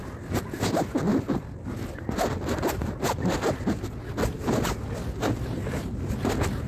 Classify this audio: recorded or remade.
recorded